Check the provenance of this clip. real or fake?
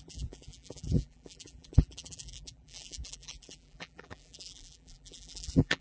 fake